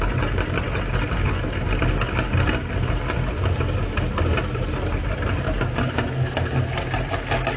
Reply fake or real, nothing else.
real